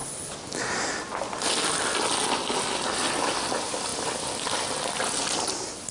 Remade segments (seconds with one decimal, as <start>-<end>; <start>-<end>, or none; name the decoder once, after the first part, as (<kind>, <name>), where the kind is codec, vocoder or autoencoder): none